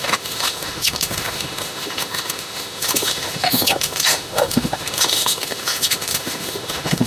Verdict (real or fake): fake